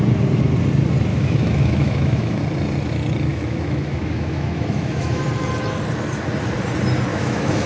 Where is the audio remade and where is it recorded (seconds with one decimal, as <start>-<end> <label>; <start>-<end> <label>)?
0.0-1.1 recorded; 1.1-2.4 remade; 2.4-3.3 recorded; 3.3-5.2 remade; 5.2-7.1 recorded; 7.1-7.7 remade